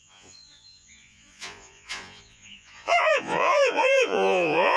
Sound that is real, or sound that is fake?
fake